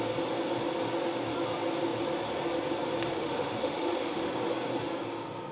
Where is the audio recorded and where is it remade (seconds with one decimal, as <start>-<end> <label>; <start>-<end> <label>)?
0.0-3.1 recorded; 3.1-4.3 remade; 4.3-5.5 recorded